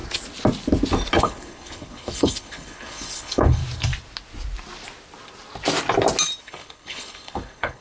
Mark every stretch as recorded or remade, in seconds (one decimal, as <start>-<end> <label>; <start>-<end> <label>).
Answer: 0.0-1.2 recorded; 1.2-3.6 remade; 3.6-6.4 recorded; 6.4-7.8 remade